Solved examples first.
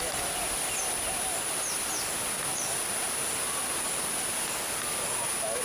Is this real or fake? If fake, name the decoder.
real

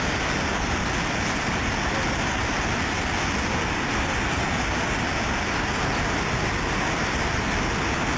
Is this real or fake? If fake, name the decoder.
real